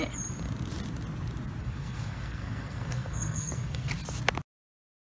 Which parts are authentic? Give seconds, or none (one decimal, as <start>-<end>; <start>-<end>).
0.0-1.6; 3.9-5.1

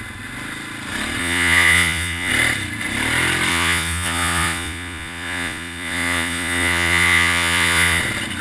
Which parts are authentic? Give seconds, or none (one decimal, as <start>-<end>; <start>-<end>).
0.0-1.2; 2.3-3.5; 8.0-8.4

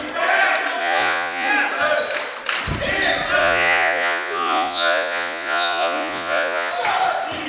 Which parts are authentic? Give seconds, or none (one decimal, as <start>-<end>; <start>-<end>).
0.0-0.8; 1.5-3.4; 6.7-7.5

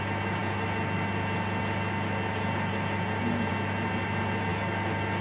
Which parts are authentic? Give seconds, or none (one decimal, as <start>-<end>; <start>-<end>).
0.0-5.2

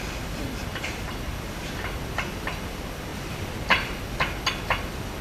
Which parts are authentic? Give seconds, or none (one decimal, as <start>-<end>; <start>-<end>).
0.0-0.7; 1.3-3.1; 4.0-5.2

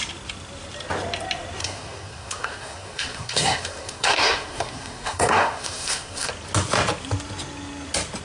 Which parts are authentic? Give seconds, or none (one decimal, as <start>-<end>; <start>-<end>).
0.0-1.6; 6.3-8.2

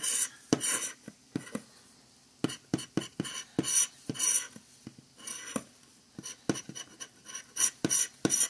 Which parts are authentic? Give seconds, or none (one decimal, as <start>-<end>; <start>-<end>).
0.0-8.5